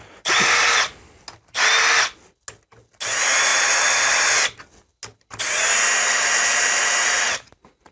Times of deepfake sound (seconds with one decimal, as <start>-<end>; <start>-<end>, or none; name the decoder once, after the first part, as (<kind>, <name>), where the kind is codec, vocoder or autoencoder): none